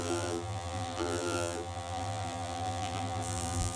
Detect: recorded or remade remade